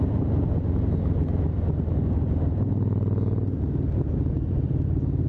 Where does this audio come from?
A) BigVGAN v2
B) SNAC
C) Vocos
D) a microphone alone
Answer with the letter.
D